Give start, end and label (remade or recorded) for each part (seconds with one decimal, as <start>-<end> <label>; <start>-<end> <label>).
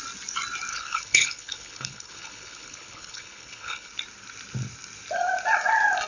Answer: 0.0-0.7 recorded; 0.7-3.9 remade; 3.9-6.1 recorded